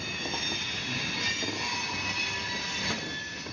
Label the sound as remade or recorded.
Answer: recorded